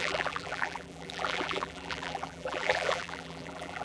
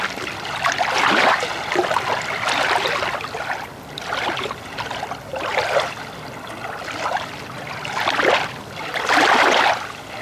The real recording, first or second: second